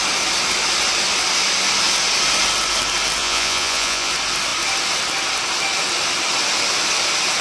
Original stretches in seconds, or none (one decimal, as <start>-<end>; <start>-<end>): 0.0-3.2; 4.1-7.4

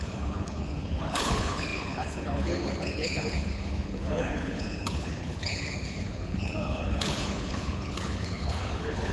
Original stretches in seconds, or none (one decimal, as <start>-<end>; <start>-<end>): none